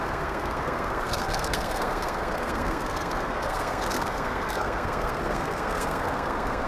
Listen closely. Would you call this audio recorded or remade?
remade